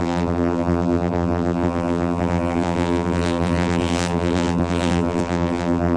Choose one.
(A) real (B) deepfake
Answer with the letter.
B